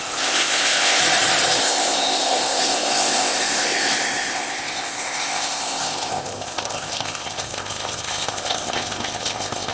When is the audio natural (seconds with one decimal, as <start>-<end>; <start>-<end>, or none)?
1.0-1.6